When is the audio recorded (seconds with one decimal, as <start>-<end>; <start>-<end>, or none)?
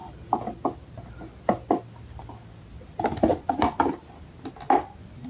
0.0-3.3; 3.8-5.3